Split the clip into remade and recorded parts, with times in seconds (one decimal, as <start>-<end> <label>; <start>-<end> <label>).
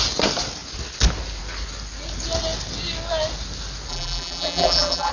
0.0-3.9 recorded; 3.9-5.1 remade